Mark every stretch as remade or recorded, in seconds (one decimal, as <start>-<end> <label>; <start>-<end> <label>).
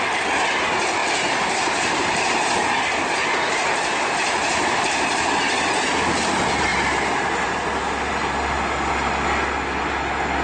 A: 0.0-1.0 recorded; 1.0-5.3 remade; 5.3-10.4 recorded